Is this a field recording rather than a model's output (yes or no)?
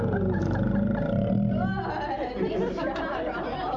yes